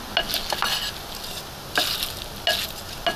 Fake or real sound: real